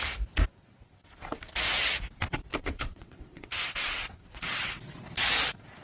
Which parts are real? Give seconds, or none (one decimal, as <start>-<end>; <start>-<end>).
0.0-2.5; 4.8-5.8